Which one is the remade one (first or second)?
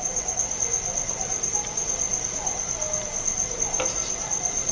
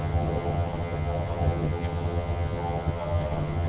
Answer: second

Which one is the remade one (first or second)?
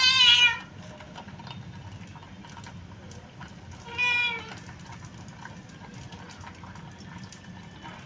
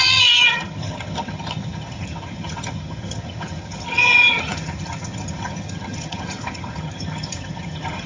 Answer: second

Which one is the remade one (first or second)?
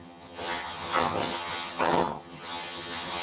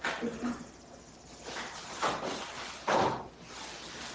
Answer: first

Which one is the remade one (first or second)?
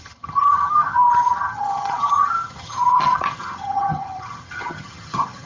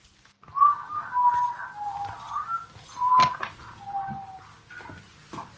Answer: first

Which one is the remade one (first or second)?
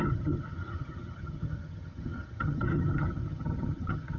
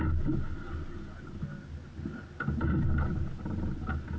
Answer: first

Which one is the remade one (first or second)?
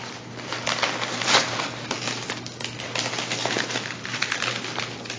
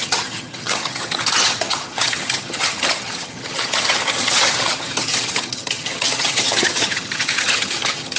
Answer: second